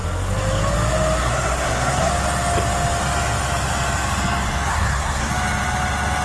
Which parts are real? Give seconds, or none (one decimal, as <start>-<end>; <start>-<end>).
0.0-1.2; 2.1-4.7; 5.3-6.2